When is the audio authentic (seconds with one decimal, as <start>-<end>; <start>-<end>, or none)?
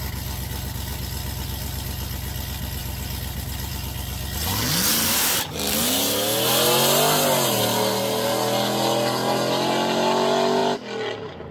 0.0-11.5